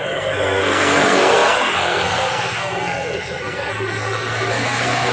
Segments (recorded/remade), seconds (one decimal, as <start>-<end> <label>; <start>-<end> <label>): 0.0-5.1 remade